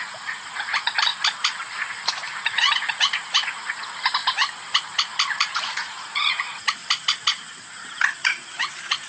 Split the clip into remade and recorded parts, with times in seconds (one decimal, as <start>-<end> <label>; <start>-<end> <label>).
0.0-1.1 remade; 1.1-2.3 recorded; 2.3-4.2 remade; 4.2-5.3 recorded; 5.3-6.8 remade; 6.8-8.6 recorded; 8.6-9.1 remade